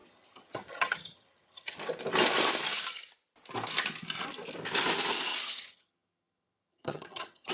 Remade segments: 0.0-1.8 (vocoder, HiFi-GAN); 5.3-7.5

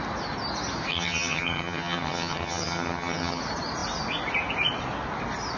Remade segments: 0.9-3.4 (vocoder, HiFi-GAN)

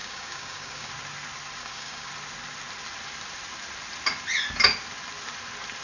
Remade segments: 0.0-0.9 (codec, DAC); 1.6-2.1

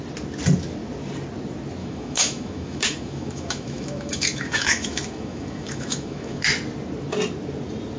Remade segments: 1.8-6.4 (autoencoder, DAC-VAE)